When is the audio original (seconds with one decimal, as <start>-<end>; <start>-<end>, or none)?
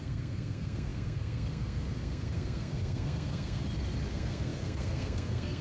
3.6-4.1